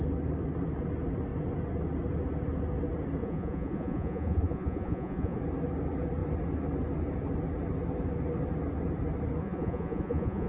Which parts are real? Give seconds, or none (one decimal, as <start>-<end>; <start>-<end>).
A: 0.0-3.2; 5.4-9.4

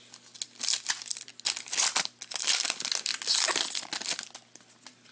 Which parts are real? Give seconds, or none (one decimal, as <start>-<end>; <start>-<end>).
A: 0.0-5.1

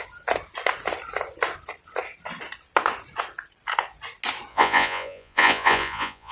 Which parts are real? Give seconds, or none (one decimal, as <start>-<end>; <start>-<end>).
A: 0.0-4.5

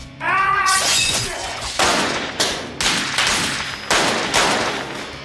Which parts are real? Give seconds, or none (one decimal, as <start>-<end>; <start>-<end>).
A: 2.7-5.2

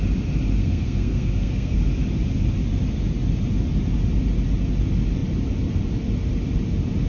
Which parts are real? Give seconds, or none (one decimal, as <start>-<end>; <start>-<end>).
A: 0.0-0.6; 1.8-7.1